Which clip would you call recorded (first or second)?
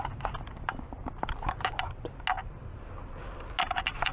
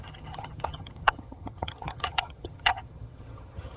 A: first